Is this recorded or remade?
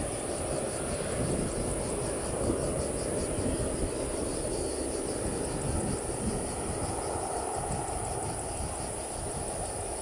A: recorded